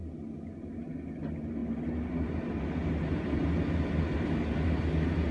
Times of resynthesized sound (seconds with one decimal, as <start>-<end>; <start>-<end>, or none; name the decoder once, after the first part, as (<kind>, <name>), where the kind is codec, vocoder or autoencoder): none